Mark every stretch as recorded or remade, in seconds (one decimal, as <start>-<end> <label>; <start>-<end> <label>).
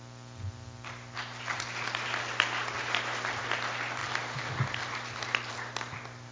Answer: 0.0-6.3 recorded